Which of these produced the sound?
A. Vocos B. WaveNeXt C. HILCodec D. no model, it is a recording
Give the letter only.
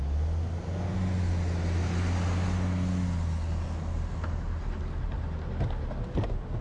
D